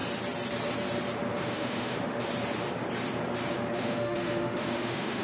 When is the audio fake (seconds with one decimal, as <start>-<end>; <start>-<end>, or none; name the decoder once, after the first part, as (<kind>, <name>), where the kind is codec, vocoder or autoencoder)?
1.3-2.3 (autoencoder, DAC-VAE); 3.7-5.2